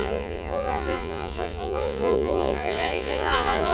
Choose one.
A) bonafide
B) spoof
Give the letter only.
B